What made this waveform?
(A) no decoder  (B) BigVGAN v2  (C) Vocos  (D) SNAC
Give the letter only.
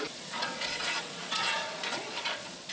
C